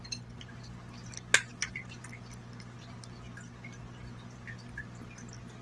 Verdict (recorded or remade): recorded